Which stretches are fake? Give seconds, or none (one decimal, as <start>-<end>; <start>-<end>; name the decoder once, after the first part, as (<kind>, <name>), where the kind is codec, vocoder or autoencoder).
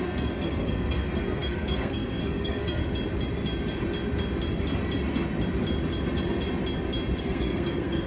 0.0-2.8 (codec, SNAC); 7.2-8.1